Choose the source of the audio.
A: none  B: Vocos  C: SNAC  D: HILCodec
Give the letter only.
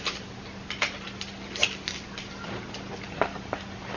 A